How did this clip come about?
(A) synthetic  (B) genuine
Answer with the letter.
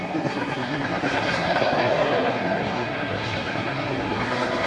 A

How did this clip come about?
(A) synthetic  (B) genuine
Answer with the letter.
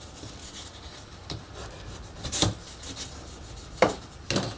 B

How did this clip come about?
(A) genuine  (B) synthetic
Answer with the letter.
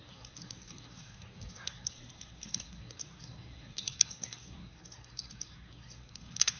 B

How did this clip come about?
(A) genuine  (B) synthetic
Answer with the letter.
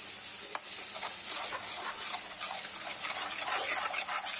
A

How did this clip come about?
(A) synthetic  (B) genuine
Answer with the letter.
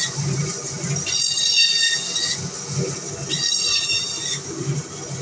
B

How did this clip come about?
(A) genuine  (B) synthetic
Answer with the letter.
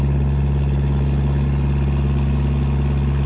A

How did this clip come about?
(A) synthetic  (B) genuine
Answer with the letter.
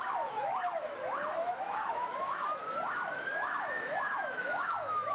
A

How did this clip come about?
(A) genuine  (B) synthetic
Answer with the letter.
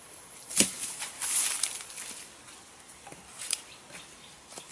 A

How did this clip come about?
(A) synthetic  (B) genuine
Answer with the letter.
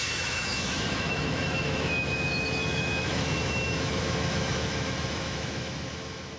A